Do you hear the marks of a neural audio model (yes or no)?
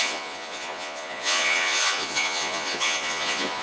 yes